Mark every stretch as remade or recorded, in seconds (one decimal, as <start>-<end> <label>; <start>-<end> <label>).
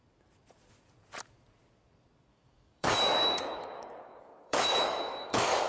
0.0-2.3 recorded; 2.3-5.7 remade